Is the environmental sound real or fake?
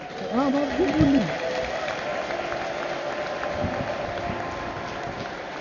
real